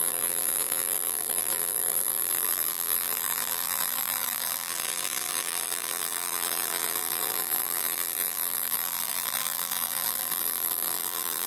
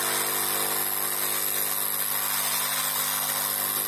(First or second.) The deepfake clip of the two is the first